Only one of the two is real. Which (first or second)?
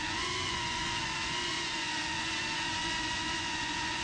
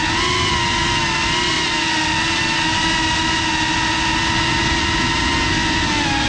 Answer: second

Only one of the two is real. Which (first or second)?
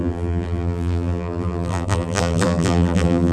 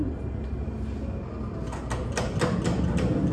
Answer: second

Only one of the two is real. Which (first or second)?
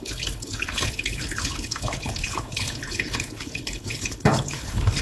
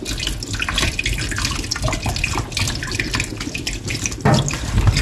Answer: second